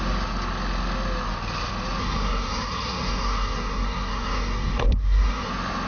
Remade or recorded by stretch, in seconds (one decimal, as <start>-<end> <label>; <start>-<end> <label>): 0.0-2.0 recorded; 2.0-5.5 remade; 5.5-5.9 recorded